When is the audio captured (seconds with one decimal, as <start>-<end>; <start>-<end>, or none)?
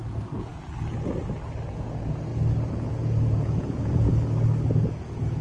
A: 0.5-1.7; 2.3-2.9; 4.1-5.0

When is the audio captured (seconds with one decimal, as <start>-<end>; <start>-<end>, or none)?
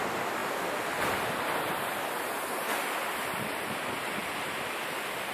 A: 0.0-0.4; 3.6-4.2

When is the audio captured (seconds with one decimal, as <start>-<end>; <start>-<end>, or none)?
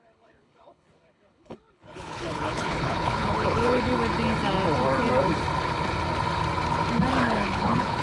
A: 3.9-7.2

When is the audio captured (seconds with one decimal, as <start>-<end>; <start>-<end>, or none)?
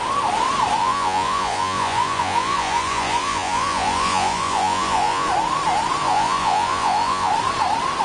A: 0.0-0.8; 5.3-6.0; 7.3-8.0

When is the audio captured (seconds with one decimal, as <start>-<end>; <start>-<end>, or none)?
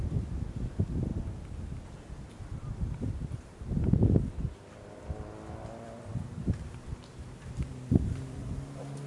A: 1.1-5.6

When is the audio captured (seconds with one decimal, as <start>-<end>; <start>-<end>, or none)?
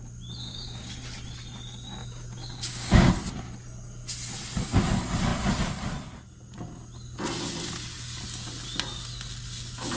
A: 0.0-0.4; 0.9-2.0; 3.1-10.0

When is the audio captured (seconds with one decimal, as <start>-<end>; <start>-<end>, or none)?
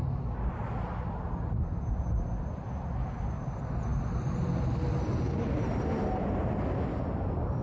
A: 0.0-7.6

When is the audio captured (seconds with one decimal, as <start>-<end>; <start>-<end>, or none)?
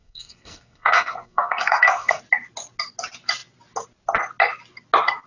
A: 2.2-5.3